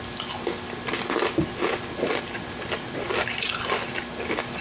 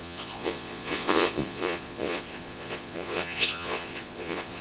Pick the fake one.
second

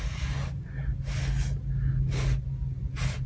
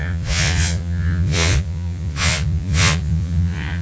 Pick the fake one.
second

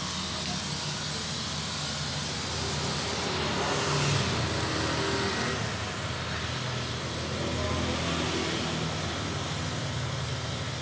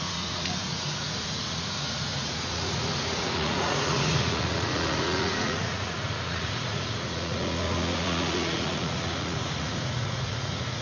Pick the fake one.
second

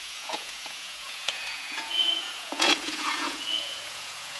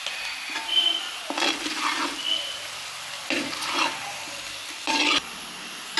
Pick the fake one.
first